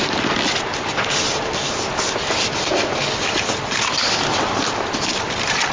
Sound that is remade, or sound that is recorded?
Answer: recorded